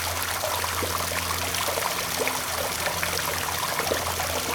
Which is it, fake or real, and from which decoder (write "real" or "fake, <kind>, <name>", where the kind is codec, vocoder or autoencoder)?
real